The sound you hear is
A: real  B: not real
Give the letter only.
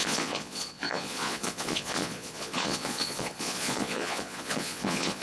B